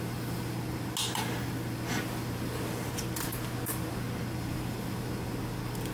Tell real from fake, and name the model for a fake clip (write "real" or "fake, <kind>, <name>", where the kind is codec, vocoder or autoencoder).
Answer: real